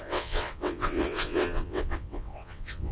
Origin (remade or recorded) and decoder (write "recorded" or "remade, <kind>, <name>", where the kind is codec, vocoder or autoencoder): remade, vocoder, WaveNeXt